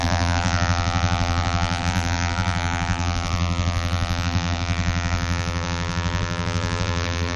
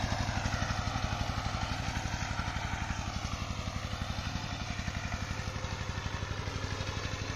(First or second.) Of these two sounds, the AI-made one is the first